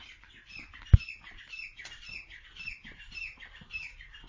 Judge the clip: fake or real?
fake